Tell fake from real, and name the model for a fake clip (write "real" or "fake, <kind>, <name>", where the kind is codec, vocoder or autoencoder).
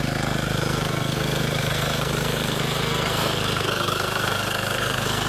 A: fake, codec, SNAC